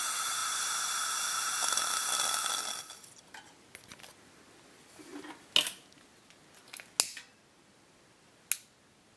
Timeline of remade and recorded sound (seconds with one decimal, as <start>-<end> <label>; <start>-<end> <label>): 0.0-9.2 recorded

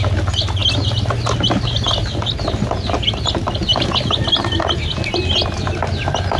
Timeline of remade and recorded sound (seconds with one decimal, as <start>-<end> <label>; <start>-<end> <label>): 0.0-6.4 recorded

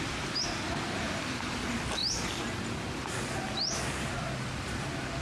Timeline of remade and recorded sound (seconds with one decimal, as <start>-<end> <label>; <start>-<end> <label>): 0.0-5.2 recorded

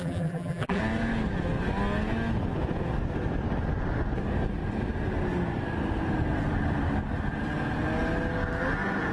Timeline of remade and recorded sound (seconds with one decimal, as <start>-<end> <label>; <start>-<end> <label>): 0.0-0.8 remade; 0.8-9.1 recorded

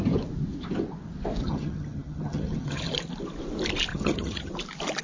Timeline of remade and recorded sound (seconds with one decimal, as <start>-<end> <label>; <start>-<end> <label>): 0.0-1.4 recorded; 1.4-2.8 remade; 2.8-3.9 recorded; 3.9-4.5 remade; 4.5-5.0 recorded

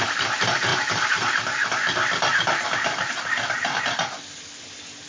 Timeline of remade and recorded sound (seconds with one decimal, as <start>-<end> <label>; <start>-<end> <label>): 0.0-5.1 recorded